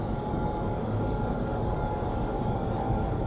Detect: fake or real fake